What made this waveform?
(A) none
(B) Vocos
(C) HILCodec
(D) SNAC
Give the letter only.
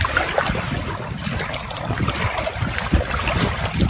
A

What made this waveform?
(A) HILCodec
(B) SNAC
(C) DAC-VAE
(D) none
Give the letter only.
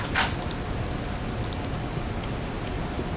D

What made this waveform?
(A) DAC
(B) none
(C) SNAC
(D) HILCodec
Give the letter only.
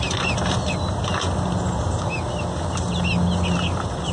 B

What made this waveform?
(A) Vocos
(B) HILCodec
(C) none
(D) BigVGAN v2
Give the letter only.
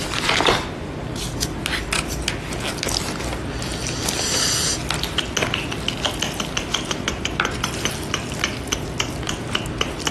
C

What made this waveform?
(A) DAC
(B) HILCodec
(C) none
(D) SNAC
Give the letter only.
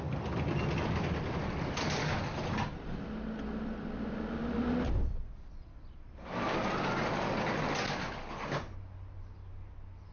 C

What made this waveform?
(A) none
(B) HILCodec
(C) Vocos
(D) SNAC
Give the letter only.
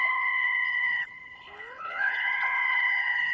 B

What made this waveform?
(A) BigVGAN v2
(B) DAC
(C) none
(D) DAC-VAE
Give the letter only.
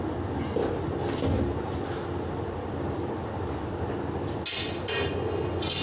C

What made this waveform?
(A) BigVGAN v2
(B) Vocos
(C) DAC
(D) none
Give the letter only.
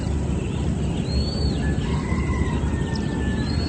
D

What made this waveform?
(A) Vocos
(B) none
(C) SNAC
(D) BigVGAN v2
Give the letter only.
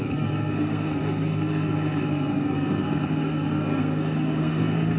C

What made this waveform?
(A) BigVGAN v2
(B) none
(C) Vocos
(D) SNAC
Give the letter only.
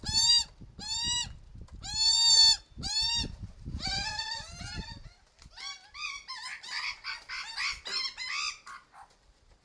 A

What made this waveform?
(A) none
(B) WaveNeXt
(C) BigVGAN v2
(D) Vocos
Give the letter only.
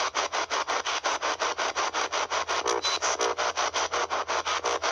A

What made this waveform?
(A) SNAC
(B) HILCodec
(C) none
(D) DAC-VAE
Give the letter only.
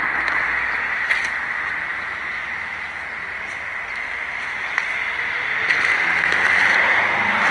C